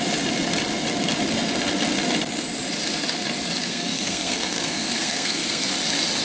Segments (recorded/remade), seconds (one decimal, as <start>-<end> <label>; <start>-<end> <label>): 0.0-3.6 recorded; 3.6-5.7 remade; 5.7-6.2 recorded